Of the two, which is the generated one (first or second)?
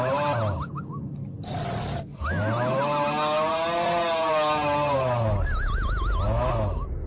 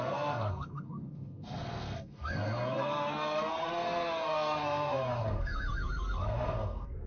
second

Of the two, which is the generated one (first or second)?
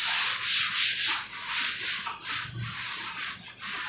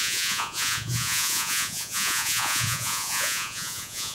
second